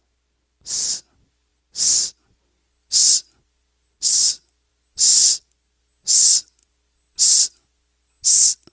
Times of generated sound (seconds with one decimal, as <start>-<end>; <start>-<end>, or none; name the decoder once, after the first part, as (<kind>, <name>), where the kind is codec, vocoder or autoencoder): none